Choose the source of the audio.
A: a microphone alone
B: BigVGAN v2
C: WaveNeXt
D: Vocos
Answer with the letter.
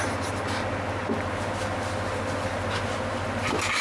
A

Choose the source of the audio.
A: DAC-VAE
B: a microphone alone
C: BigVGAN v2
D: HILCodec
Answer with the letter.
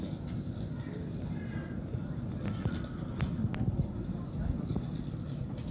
B